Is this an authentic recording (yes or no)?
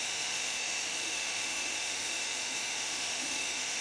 no